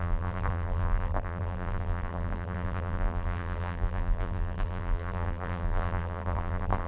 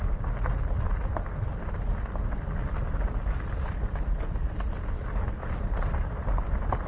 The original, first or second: second